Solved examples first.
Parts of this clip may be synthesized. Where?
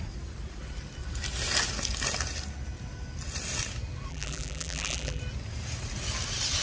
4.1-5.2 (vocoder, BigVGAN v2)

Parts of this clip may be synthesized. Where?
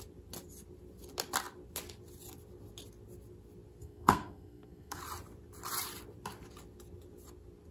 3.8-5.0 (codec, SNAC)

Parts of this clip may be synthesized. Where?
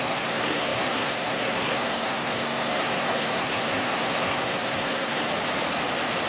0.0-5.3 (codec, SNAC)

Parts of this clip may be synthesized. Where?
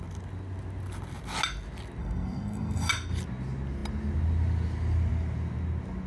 2.0-2.9 (codec, SNAC)